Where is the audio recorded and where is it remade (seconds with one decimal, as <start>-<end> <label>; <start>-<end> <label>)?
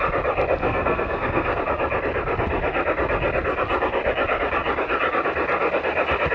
0.0-0.6 recorded; 0.6-1.6 remade; 1.6-6.3 recorded